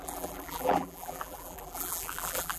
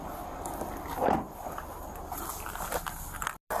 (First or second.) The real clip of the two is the second